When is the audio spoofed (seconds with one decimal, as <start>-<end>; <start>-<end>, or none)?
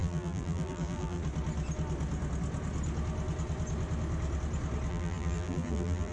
0.0-1.2; 4.9-6.1